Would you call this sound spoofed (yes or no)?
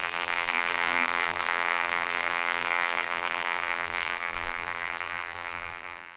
yes